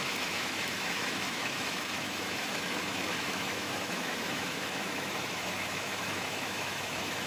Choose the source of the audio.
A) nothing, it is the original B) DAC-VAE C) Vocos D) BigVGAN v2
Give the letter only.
B